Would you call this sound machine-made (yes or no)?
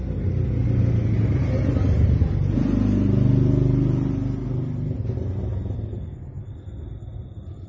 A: no